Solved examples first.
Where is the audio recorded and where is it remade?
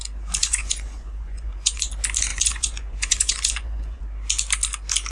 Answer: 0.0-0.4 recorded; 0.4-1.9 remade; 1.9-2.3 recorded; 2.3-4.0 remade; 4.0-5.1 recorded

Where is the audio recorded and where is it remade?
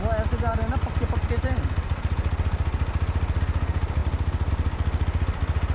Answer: 0.0-5.7 recorded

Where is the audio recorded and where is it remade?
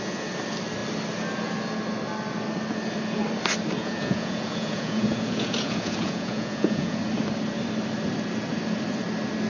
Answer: 0.0-3.8 recorded; 3.8-7.0 remade; 7.0-9.5 recorded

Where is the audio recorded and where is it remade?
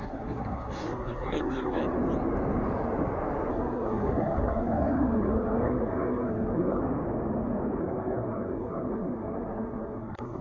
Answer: 0.0-1.8 remade; 1.8-3.5 recorded; 3.5-6.8 remade; 6.8-7.8 recorded; 7.8-10.4 remade